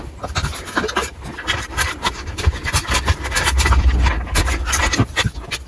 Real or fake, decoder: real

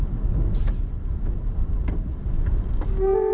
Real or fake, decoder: fake, vocoder, BigVGAN v2